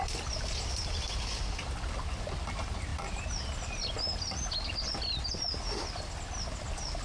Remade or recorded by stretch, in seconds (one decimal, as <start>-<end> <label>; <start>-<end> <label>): 0.0-7.0 recorded